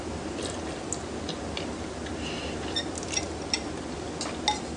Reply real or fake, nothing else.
real